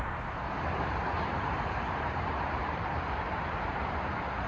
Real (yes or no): no